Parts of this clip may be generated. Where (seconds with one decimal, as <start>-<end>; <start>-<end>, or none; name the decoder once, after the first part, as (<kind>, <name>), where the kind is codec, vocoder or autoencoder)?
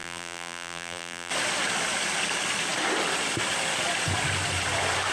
0.0-1.3 (vocoder, BigVGAN v2)